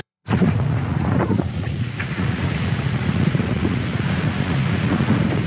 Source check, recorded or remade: remade